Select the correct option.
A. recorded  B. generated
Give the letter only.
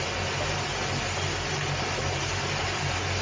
A